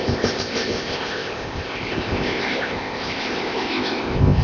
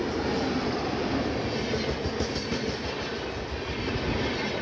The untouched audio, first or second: second